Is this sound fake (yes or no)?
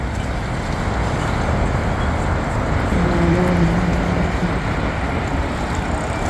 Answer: no